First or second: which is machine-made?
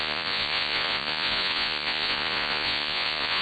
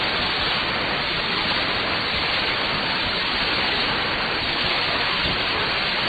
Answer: first